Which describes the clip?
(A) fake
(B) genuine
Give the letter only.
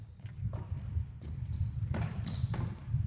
B